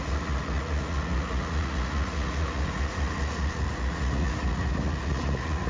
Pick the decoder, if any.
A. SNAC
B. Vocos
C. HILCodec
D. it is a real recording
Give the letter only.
B